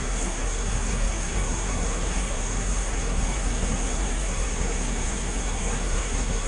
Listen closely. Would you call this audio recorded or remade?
remade